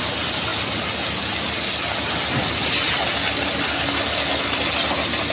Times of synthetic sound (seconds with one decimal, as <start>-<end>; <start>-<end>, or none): none